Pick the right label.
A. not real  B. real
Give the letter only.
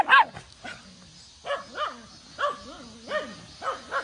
B